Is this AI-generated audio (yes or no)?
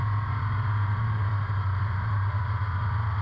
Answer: no